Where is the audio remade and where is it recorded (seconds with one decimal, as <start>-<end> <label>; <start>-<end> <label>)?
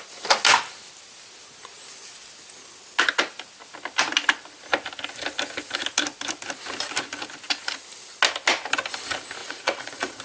0.0-9.4 recorded; 9.4-10.2 remade